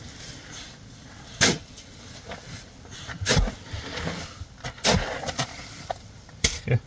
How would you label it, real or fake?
real